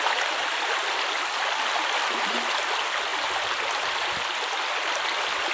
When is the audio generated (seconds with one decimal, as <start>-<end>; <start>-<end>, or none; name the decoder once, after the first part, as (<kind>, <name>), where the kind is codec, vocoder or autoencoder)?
none